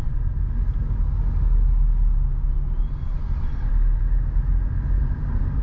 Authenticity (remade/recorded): recorded